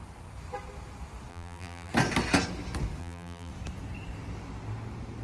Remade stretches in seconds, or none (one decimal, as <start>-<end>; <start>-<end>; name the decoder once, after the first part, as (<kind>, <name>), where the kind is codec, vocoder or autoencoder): 1.3-1.9 (vocoder, BigVGAN v2); 3.0-3.5